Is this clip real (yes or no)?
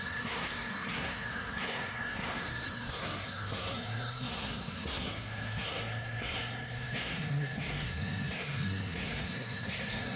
no